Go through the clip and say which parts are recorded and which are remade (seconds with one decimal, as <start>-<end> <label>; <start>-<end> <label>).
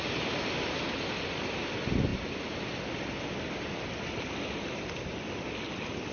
0.0-6.1 recorded